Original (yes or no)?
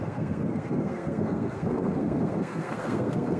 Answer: no